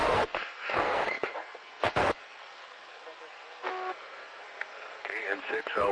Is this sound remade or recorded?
remade